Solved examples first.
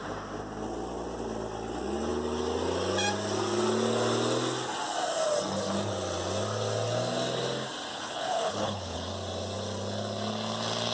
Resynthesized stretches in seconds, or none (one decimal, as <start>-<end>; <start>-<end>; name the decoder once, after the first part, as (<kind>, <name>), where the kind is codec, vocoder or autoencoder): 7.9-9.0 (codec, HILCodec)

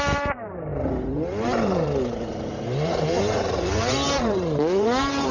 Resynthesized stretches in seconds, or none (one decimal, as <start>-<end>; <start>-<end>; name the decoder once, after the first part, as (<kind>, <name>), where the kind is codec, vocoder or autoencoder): 0.0-5.3 (vocoder, BigVGAN v2)

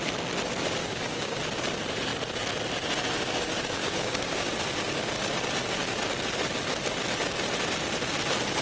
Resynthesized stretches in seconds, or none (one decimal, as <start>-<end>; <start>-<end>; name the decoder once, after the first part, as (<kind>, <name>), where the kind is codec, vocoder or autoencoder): 0.8-1.4 (codec, DAC); 3.8-4.5

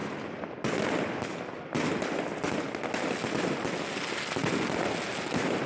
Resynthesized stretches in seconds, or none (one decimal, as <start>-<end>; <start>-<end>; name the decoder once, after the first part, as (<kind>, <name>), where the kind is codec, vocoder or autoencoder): none